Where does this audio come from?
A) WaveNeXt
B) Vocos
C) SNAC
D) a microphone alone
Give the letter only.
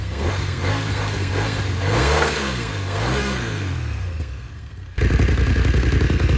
C